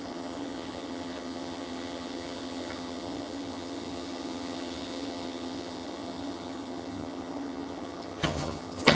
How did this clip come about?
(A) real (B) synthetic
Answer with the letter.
B